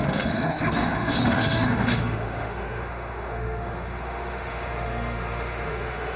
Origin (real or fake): fake